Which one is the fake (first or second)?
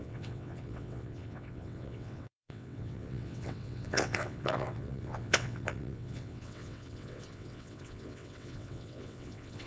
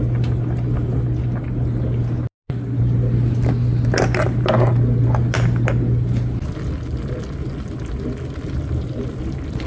first